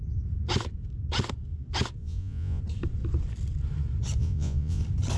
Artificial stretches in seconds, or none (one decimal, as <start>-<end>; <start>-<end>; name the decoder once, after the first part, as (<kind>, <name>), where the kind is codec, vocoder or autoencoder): 2.0-2.6 (vocoder, Vocos); 4.2-4.8